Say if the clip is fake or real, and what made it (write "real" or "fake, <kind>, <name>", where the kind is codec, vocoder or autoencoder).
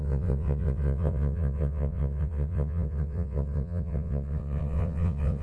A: fake, vocoder, WaveNeXt